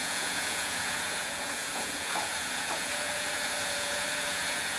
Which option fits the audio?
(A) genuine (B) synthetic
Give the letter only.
B